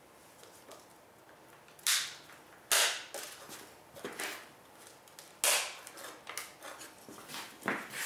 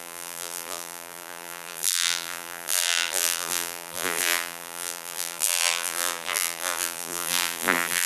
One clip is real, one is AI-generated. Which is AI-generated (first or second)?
second